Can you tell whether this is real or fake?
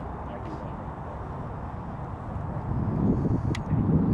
real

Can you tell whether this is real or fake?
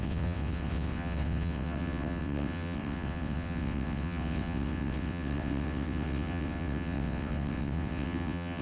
fake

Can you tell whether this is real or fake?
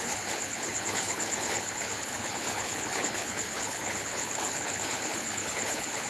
fake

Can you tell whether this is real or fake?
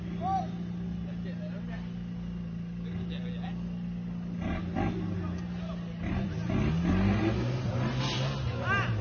real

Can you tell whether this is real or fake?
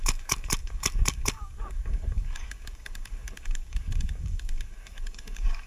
fake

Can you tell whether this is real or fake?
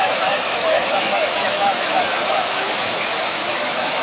fake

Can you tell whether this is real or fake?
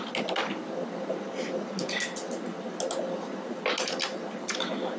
real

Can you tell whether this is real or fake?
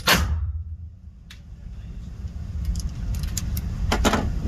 fake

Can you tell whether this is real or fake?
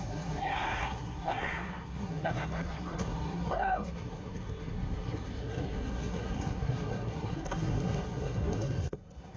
fake